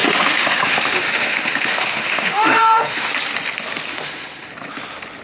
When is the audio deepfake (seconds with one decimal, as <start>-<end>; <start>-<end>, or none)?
0.0-3.1; 3.9-4.5